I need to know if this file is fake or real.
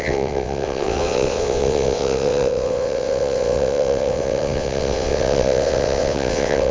fake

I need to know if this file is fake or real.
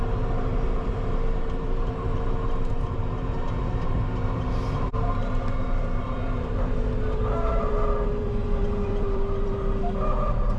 fake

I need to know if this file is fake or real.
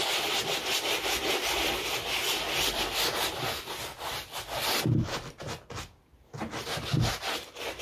real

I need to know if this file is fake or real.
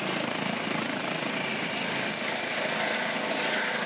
real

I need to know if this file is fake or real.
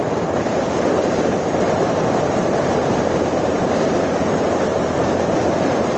fake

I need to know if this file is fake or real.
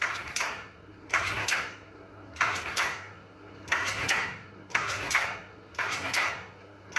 fake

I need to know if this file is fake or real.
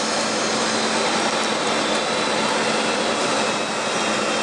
real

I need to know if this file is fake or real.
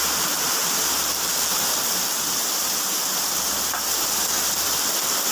fake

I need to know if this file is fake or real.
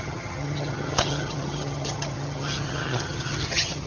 fake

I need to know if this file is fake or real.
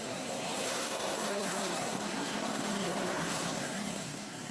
fake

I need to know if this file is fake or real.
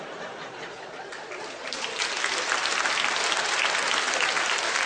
real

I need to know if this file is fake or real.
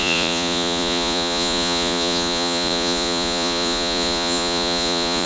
fake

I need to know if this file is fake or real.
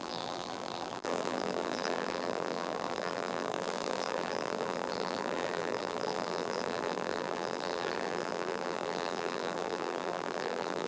fake